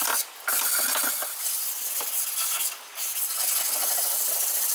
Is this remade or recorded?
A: recorded